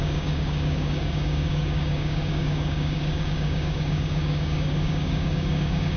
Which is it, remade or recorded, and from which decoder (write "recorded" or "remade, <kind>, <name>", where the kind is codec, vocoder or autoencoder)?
remade, codec, DAC